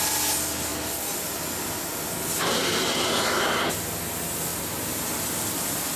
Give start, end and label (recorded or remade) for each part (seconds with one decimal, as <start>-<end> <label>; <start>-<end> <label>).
0.0-6.0 recorded